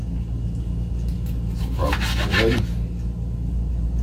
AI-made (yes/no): no